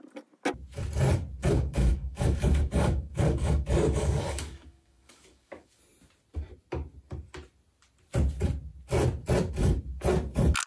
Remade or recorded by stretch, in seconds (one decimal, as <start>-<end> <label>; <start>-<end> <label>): 0.0-1.4 recorded; 1.4-5.8 remade; 5.8-10.7 recorded